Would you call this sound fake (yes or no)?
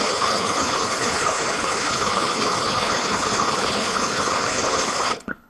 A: yes